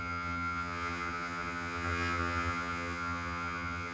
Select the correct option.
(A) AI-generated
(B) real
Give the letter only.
A